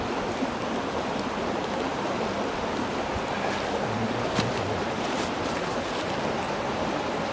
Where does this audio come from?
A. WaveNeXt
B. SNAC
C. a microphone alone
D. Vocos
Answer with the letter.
C